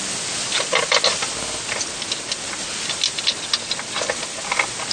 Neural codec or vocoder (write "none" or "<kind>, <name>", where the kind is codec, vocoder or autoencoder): none